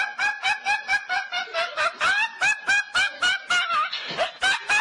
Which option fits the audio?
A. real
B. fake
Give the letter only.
A